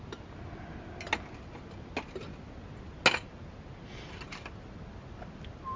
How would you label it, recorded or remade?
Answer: recorded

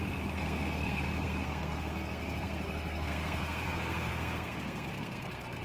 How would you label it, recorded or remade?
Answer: remade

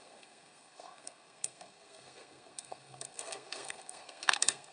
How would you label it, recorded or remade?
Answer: remade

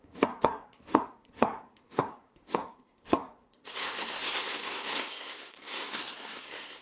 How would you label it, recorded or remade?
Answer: remade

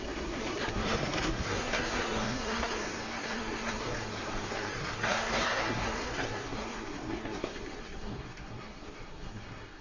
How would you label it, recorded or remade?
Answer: remade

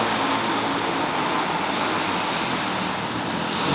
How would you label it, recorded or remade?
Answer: recorded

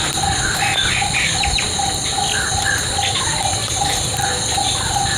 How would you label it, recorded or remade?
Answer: recorded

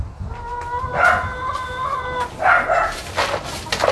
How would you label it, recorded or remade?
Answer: recorded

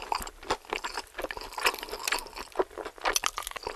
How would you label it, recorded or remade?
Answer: recorded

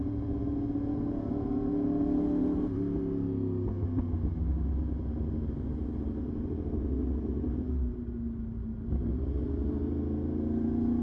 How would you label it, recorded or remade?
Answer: recorded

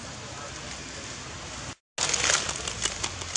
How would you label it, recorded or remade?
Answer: recorded